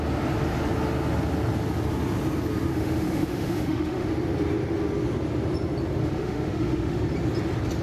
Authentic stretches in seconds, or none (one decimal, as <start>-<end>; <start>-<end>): 0.0-2.7; 4.1-6.0; 7.0-7.8